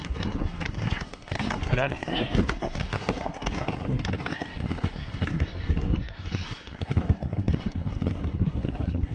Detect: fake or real fake